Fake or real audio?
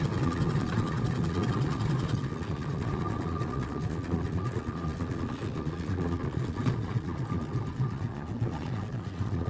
fake